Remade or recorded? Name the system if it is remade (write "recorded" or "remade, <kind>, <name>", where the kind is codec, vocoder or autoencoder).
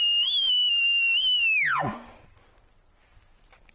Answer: recorded